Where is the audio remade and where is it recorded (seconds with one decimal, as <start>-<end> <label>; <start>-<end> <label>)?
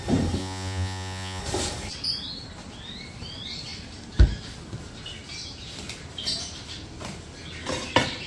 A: 0.0-0.4 recorded; 0.4-1.4 remade; 1.4-8.3 recorded